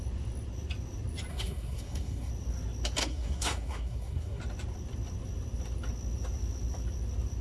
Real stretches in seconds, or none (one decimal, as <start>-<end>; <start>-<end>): 0.0-1.3; 2.3-3.0; 4.4-7.4

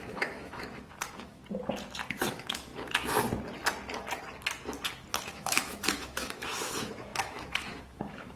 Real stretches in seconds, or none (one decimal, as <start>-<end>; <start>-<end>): 1.4-2.3; 2.7-5.2

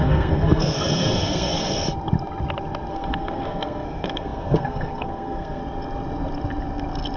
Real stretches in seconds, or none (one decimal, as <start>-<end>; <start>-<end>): 1.7-2.9; 5.6-7.2

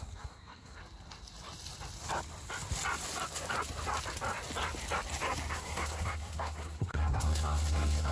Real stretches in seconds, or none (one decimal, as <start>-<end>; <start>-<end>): 0.8-5.5

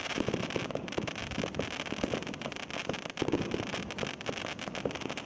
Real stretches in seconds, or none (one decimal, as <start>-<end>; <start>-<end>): 0.0-5.3